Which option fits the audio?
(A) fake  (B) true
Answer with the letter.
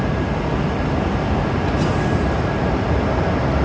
B